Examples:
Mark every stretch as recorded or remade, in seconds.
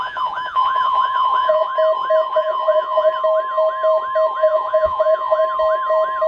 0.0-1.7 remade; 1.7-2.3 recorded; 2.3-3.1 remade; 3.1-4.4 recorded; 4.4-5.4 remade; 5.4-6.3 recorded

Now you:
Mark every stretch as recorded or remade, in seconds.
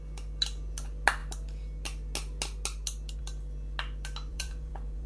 0.0-4.3 recorded; 4.3-5.1 remade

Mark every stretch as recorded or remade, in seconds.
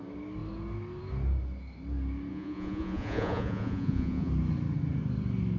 0.0-2.3 recorded; 2.3-4.3 remade; 4.3-5.6 recorded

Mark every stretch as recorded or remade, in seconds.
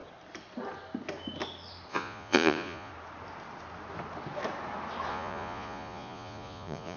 0.0-1.9 recorded; 1.9-2.9 remade; 2.9-5.1 recorded; 5.1-7.0 remade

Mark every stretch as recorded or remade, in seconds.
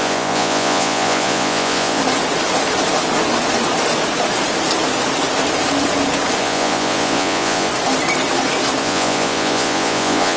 0.0-2.0 remade; 2.0-6.4 recorded; 6.4-7.7 remade; 7.7-8.8 recorded; 8.8-10.4 remade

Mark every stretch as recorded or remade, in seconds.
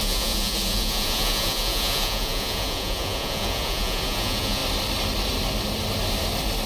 0.0-4.6 remade; 4.6-6.7 recorded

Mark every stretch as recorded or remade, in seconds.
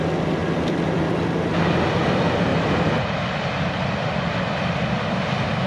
0.0-5.7 recorded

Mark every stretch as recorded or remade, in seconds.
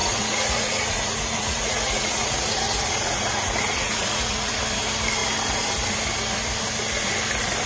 0.0-4.6 remade; 4.6-7.7 recorded